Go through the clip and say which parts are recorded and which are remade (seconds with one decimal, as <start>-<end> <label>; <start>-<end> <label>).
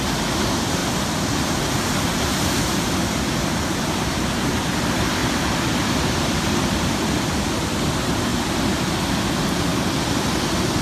0.0-5.2 recorded; 5.2-7.3 remade; 7.3-8.3 recorded; 8.3-8.9 remade; 8.9-10.8 recorded